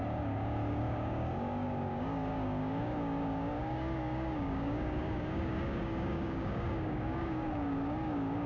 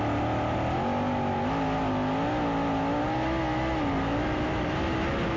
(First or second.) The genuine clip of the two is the second